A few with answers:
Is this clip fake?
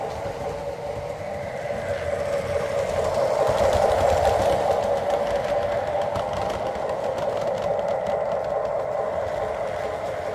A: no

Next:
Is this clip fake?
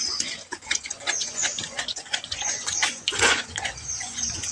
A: yes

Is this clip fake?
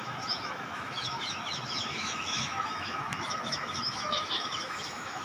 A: yes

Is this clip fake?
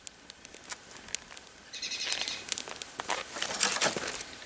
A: no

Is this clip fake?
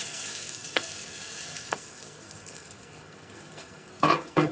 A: yes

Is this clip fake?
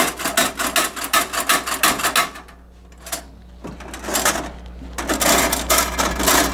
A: no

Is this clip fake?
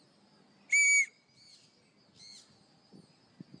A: no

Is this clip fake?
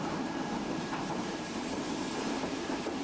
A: yes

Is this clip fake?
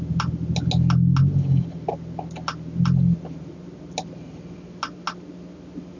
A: no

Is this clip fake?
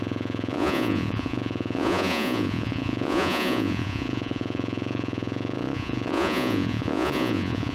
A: yes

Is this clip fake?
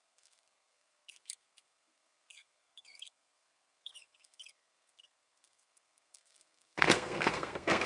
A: yes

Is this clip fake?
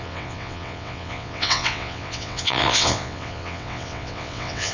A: yes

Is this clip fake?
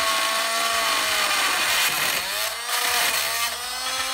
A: no